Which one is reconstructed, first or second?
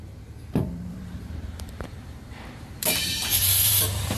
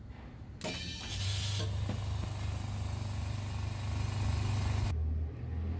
first